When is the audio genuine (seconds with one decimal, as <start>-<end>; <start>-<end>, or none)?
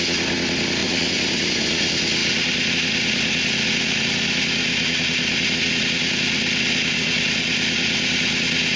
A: 0.0-0.8; 1.7-8.8